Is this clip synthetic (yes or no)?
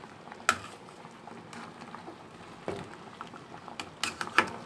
no